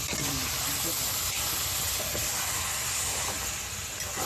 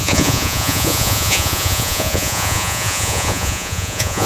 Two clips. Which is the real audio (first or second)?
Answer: first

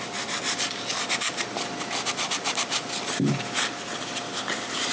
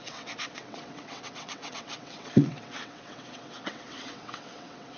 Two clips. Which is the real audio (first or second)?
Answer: first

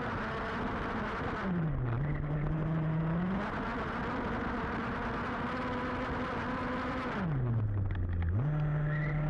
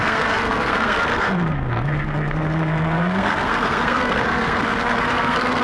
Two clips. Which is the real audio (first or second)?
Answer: first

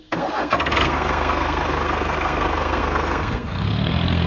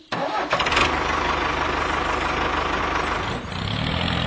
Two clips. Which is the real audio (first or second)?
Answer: second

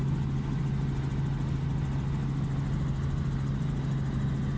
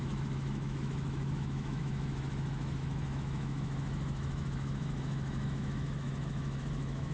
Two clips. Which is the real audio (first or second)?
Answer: first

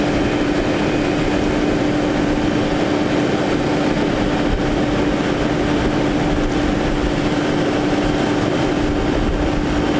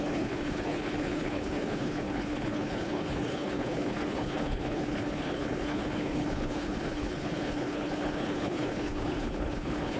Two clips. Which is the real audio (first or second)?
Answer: first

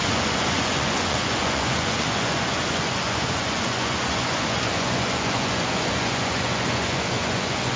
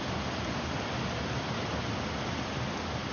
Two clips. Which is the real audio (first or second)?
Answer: second